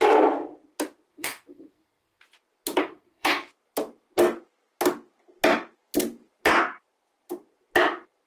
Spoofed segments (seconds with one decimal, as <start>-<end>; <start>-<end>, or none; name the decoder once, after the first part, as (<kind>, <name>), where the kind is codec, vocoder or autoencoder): 1.1-2.2 (codec, SNAC); 2.8-3.5

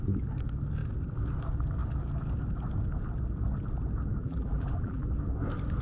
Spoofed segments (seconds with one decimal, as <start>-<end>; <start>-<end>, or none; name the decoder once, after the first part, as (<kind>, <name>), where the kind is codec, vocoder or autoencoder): 4.2-5.1 (vocoder, BigVGAN v2)

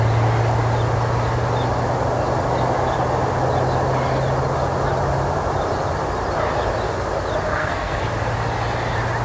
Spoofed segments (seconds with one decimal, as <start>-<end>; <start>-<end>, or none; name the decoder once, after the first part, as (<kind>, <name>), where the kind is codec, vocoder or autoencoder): 7.5-8.0 (codec, SNAC)

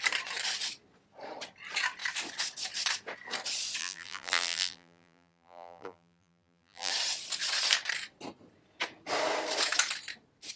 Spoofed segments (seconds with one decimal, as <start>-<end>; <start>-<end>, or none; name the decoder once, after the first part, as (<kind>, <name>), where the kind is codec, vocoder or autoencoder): 3.8-6.9 (vocoder, BigVGAN v2)

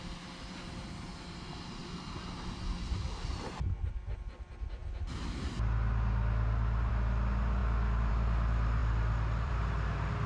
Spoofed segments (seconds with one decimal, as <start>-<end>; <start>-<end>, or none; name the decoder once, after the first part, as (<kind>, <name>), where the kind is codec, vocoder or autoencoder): 8.8-9.5 (vocoder, BigVGAN v2)